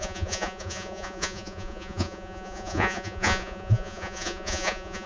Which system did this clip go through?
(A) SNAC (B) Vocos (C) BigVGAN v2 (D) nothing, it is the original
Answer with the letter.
B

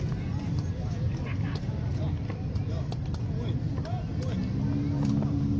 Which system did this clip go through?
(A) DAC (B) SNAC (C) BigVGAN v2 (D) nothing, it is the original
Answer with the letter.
D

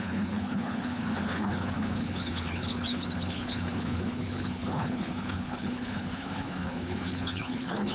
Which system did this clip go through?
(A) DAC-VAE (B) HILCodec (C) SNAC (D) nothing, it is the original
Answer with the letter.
B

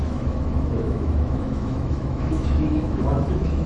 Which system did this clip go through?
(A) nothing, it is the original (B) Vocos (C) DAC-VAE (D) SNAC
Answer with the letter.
C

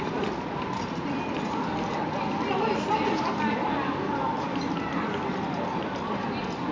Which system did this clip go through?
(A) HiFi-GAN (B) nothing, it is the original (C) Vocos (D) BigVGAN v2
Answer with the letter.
B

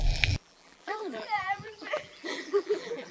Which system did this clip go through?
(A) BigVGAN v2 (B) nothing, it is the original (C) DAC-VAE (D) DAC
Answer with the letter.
A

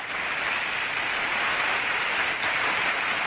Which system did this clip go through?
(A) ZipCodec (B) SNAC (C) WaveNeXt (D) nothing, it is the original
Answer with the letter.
D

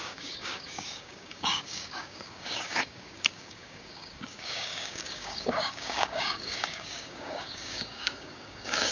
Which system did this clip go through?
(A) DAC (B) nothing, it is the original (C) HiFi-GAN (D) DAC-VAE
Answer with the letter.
A